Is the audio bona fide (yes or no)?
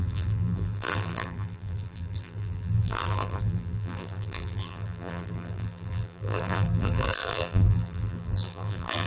no